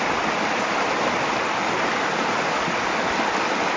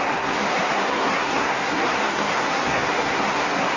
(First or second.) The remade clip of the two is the second